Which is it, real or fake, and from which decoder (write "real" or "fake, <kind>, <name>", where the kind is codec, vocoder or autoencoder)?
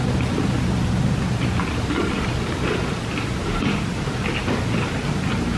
real